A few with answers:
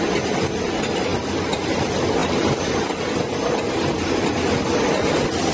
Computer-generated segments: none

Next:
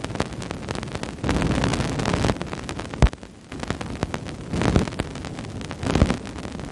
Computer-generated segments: none